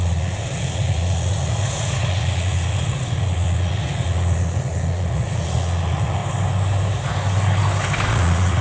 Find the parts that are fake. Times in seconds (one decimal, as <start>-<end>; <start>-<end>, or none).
0.0-6.2; 8.1-8.6